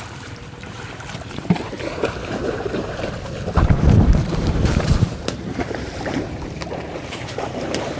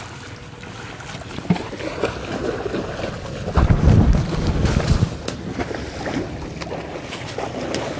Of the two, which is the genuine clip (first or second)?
second